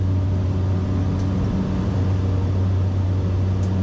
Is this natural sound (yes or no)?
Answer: yes